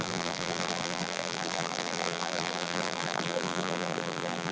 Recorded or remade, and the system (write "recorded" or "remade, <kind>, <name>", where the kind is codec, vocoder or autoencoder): remade, vocoder, BigVGAN v2